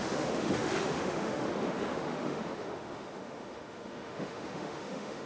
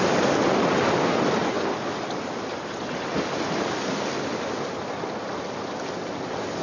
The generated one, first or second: first